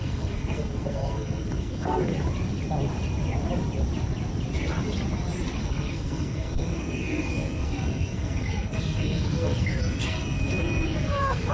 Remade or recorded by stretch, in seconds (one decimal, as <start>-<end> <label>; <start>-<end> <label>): 0.0-2.1 remade; 2.1-5.6 recorded; 5.6-11.5 remade